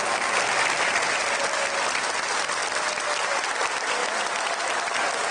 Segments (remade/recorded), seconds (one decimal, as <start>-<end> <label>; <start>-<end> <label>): 0.0-5.3 recorded